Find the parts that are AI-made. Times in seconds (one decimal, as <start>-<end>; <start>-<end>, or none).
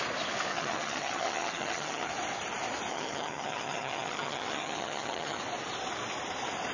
0.5-2.1; 2.9-5.4